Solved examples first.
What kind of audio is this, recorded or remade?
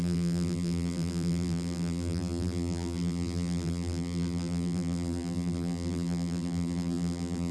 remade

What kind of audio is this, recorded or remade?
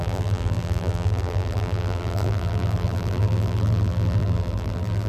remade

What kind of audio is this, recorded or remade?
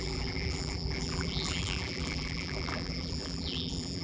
remade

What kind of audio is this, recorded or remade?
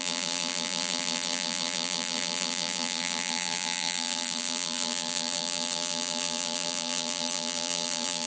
remade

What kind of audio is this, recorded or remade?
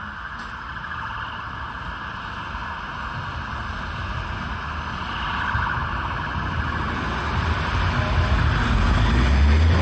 recorded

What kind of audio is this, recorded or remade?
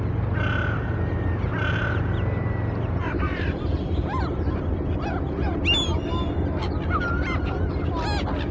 recorded